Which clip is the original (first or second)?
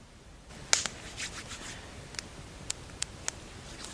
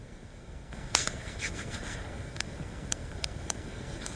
first